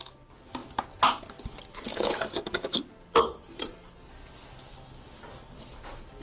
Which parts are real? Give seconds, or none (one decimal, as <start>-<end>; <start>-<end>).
0.0-1.9; 2.8-6.2